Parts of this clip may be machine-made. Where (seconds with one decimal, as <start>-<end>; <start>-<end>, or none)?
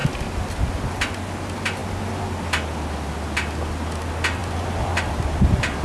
4.4-5.0